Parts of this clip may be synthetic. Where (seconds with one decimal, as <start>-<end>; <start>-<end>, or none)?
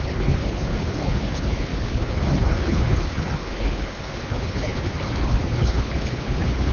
0.0-6.7